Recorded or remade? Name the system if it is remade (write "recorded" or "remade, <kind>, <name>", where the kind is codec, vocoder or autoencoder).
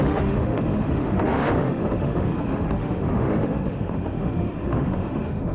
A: remade, autoencoder, DAC-VAE